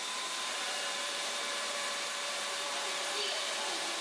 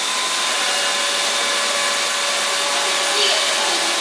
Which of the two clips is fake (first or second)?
first